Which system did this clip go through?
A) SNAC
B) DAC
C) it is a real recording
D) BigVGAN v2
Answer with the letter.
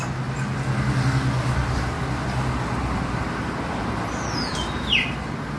C